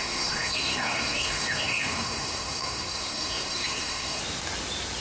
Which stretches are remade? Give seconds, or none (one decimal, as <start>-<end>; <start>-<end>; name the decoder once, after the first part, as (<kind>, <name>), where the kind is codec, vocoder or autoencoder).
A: 0.0-4.2 (codec, SNAC)